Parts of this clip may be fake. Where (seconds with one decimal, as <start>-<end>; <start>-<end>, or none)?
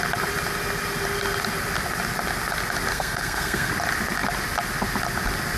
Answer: 2.9-3.7